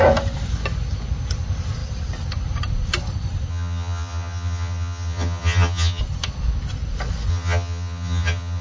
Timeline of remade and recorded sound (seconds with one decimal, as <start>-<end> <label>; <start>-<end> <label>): 0.0-3.5 recorded; 3.5-6.0 remade; 6.0-7.3 recorded; 7.3-8.6 remade